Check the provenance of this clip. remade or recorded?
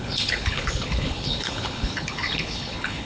remade